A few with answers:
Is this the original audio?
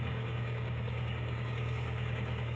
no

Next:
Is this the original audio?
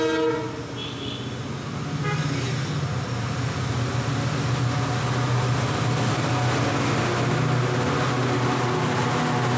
yes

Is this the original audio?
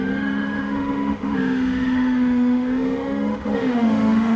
no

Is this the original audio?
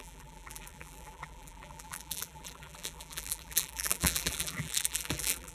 no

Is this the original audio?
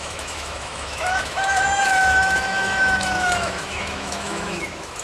no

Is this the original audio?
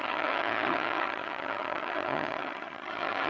no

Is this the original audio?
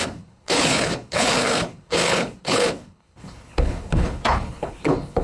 no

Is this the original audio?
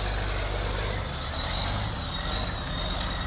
yes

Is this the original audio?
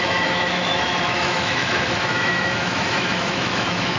no